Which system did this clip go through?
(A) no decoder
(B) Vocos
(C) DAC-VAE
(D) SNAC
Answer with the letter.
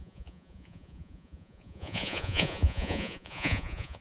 B